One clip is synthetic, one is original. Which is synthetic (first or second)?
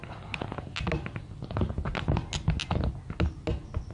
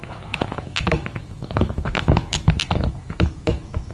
second